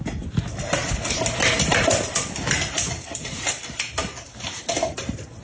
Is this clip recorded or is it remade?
recorded